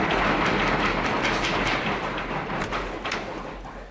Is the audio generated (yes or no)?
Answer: no